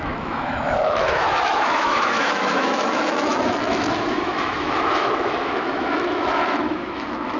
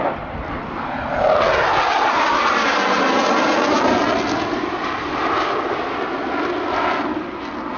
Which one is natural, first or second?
second